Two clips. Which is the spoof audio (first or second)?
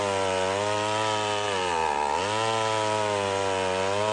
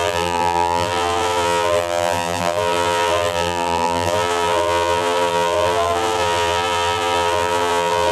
second